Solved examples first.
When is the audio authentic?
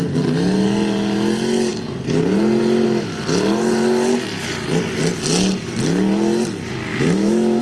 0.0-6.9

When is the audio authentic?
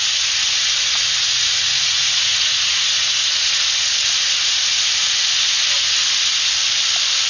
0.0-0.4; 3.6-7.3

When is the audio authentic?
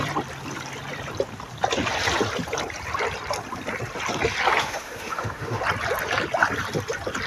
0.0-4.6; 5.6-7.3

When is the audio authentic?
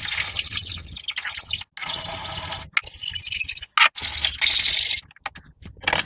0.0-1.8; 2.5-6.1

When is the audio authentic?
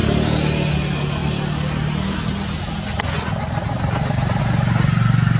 0.0-5.4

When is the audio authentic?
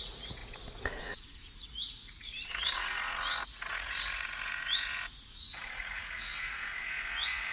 0.4-1.0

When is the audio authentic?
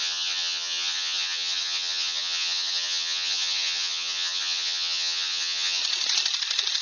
5.8-6.8